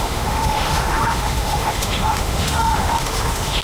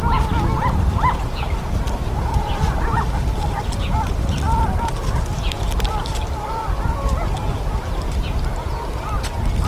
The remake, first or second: first